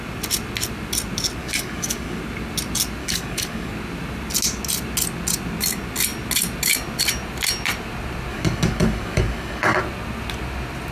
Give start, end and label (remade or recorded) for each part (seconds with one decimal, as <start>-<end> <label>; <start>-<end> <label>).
0.0-1.4 recorded; 1.4-2.2 remade; 2.2-3.0 recorded; 3.0-3.7 remade; 3.7-8.3 recorded; 8.3-9.8 remade; 9.8-10.9 recorded

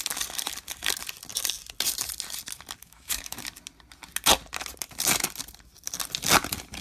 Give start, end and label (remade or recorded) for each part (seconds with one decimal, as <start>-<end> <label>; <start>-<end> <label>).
0.0-2.8 recorded; 2.8-3.4 remade; 3.4-6.8 recorded